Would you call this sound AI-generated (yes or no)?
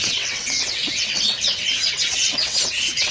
yes